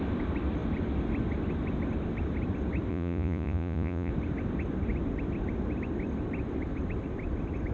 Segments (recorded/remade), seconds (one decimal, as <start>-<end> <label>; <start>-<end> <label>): 0.0-2.9 recorded; 2.9-4.1 remade; 4.1-7.7 recorded